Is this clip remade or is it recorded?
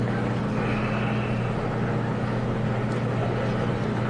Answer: recorded